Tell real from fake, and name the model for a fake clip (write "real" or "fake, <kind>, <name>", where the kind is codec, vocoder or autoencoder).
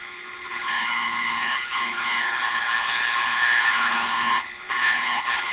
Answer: fake, codec, HILCodec